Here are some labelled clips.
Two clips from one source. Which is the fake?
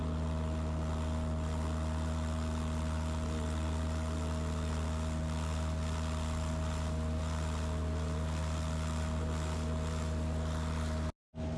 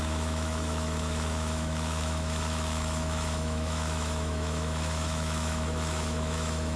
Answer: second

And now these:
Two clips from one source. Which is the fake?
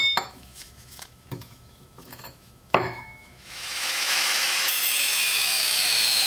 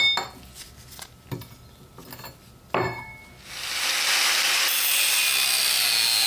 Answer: first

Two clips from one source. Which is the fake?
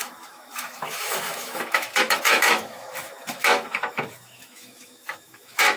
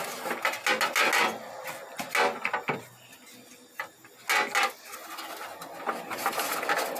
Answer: first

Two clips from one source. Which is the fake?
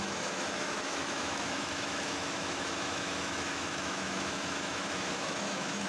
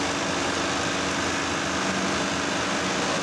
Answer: first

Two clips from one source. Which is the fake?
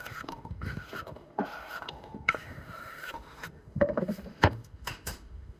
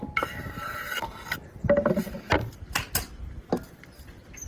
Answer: first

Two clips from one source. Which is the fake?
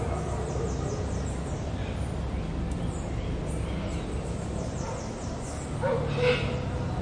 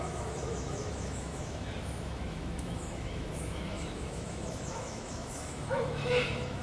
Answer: second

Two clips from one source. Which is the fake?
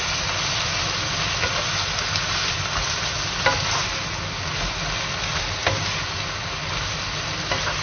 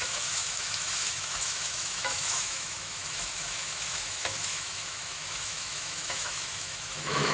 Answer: second